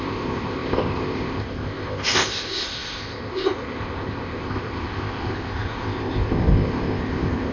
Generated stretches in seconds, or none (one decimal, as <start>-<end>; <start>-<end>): 0.0-7.5